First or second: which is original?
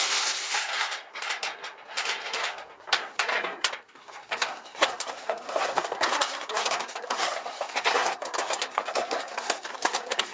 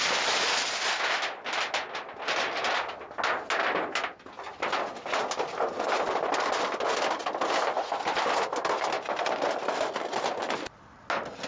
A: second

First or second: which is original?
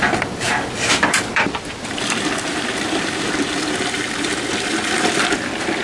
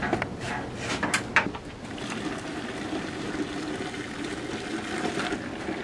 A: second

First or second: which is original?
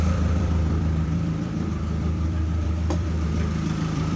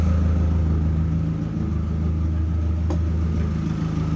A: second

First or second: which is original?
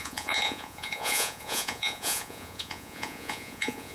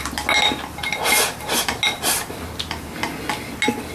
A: second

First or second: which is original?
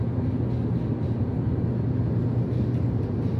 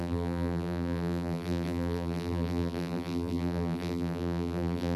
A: first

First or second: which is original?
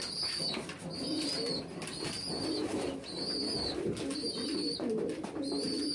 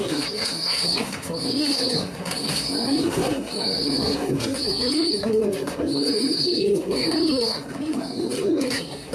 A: first